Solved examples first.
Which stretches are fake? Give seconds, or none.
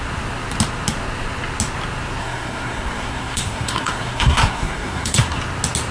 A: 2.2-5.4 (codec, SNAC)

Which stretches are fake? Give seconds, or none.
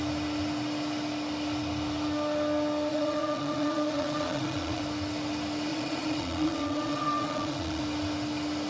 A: 2.9-4.8 (vocoder, Vocos); 5.7-7.8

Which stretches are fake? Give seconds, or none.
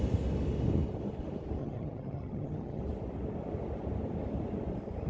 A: 1.6-2.8 (vocoder, HiFi-GAN)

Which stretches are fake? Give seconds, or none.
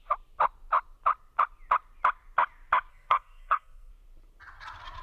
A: 2.9-3.9 (codec, SNAC)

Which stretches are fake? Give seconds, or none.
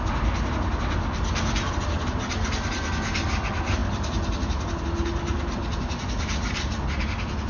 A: none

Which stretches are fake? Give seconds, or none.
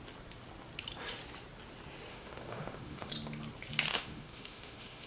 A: 2.1-3.1 (autoencoder, DAC-VAE); 3.9-5.1